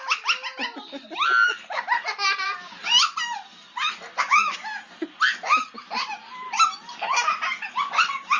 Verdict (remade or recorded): recorded